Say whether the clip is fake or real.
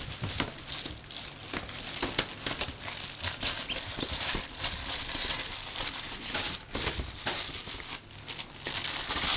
real